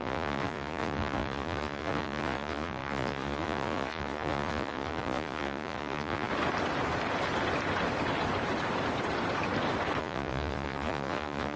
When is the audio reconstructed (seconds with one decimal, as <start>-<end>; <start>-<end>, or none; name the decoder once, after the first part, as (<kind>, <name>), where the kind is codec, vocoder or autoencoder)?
0.0-6.3 (vocoder, Vocos); 10.0-11.6